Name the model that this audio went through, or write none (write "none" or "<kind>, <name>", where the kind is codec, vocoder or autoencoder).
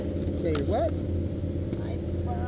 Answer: none